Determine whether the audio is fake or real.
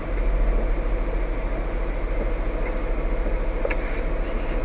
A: real